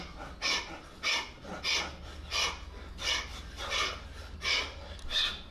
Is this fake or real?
real